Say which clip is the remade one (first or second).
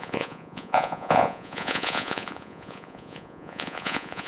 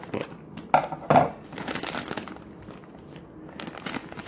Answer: first